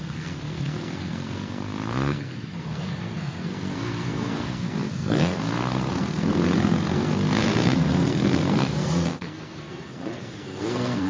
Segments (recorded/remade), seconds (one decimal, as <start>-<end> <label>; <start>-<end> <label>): 0.0-11.1 remade